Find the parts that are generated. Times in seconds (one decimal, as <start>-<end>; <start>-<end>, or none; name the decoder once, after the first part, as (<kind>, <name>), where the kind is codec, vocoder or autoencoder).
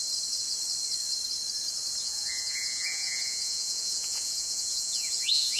2.0-5.6 (vocoder, Vocos)